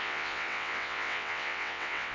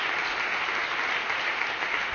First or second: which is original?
second